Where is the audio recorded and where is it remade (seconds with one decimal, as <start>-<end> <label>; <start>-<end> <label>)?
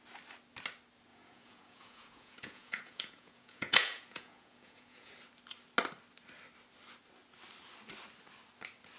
0.0-1.1 recorded; 1.1-5.1 remade; 5.1-9.0 recorded